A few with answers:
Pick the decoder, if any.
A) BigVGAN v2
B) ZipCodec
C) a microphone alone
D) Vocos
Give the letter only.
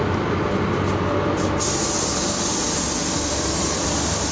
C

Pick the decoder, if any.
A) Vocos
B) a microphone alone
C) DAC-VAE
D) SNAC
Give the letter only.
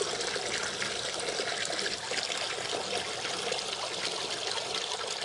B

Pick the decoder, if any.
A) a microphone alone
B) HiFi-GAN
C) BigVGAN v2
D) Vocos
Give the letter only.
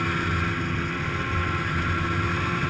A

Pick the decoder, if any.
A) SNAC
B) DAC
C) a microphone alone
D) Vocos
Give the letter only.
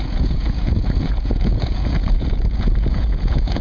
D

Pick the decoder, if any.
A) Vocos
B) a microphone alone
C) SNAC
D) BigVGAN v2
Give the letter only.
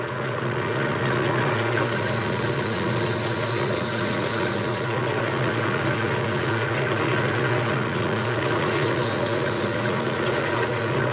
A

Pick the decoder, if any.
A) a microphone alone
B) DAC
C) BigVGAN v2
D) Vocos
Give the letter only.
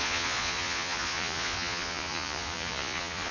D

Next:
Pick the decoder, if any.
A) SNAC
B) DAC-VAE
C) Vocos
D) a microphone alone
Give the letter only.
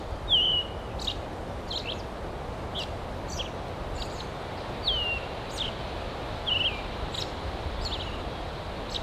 D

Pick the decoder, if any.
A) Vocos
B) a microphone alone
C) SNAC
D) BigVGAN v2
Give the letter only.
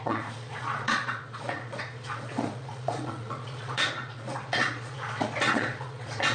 A